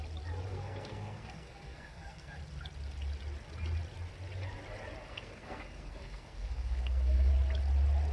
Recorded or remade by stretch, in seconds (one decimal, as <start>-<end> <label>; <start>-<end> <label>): 0.0-0.5 recorded; 0.5-2.4 remade; 2.4-5.1 recorded; 5.1-7.3 remade; 7.3-8.1 recorded